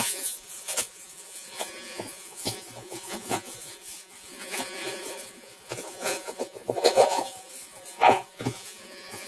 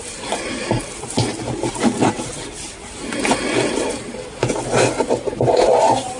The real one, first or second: second